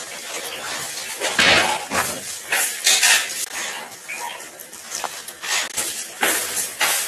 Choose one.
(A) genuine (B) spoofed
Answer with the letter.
A